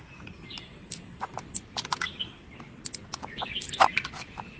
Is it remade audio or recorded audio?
recorded